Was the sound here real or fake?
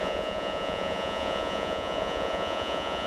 fake